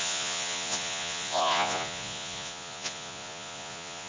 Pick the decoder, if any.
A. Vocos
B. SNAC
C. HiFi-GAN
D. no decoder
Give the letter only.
A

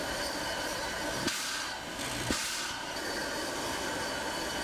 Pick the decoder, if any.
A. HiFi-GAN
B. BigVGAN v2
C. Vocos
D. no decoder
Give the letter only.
B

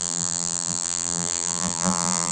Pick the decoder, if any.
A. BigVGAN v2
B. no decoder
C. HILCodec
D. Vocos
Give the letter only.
A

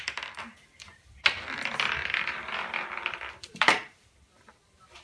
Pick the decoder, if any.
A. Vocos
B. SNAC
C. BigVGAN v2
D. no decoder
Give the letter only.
C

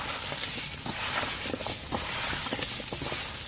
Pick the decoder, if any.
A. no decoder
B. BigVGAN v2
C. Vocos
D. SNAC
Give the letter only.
A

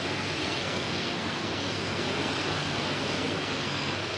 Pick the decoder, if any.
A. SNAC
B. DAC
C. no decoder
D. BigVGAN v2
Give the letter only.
A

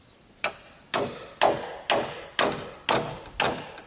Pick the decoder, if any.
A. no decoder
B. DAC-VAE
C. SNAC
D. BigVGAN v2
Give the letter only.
A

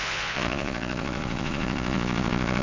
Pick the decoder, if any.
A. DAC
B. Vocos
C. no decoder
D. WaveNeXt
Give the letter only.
B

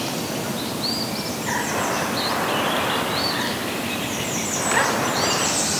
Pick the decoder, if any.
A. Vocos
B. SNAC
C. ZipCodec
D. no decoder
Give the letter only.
D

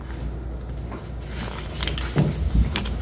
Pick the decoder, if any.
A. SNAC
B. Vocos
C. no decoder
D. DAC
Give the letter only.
C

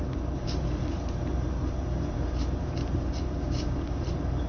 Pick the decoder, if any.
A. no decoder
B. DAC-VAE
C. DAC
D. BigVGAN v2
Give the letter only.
D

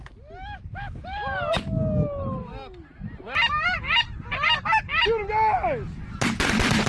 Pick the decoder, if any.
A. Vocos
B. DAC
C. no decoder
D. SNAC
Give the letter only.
C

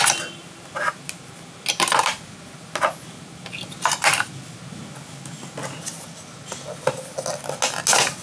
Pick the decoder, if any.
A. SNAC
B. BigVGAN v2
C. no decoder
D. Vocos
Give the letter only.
C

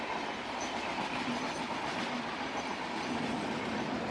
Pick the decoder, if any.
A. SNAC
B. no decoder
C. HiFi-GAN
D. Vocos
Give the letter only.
B